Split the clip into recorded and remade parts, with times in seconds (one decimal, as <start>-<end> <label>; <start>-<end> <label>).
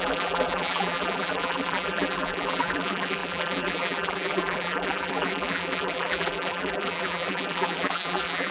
0.0-8.5 remade